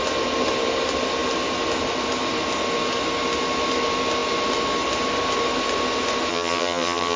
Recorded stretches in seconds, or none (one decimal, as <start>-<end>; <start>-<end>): 0.0-6.3